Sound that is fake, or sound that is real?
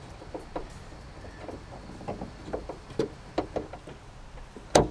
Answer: real